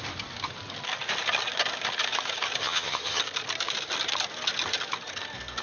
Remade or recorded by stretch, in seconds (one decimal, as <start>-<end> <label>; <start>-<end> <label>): 0.0-2.6 recorded; 2.6-3.2 remade; 3.2-5.6 recorded